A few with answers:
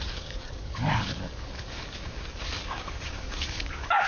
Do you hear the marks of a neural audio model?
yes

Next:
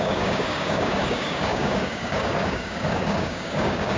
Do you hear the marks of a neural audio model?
yes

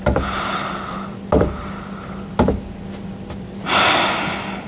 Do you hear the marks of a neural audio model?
no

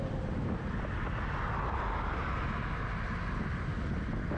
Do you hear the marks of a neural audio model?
no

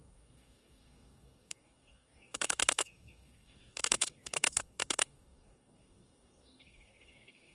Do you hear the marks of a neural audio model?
yes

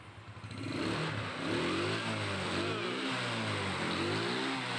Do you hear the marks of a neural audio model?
no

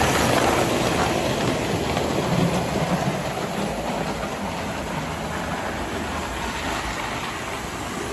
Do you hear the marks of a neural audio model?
no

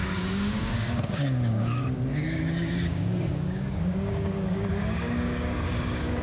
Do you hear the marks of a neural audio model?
yes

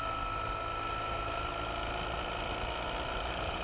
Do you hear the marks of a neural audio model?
no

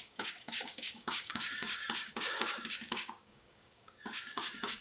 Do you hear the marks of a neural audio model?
yes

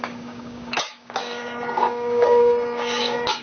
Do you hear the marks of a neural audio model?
yes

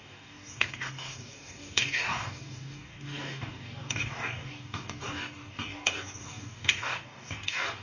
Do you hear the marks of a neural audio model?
yes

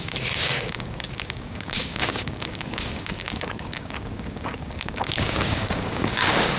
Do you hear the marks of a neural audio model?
yes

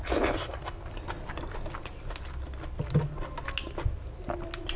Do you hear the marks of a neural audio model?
no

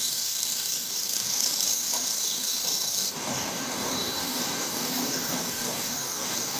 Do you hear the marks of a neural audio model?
yes